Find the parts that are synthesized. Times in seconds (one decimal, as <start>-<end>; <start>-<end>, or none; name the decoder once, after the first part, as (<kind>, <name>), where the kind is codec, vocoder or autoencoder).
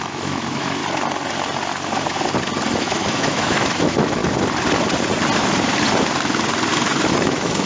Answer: 0.0-0.8 (autoencoder, DAC-VAE); 2.8-4.2; 7.1-7.7